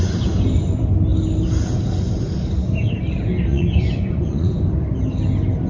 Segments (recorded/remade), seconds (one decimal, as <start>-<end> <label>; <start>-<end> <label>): 0.0-3.5 recorded; 3.5-4.5 remade; 4.5-5.7 recorded